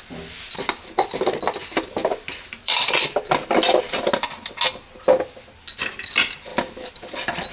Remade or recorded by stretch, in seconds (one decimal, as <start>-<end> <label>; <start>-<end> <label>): 0.0-2.0 recorded; 2.0-2.9 remade; 2.9-7.5 recorded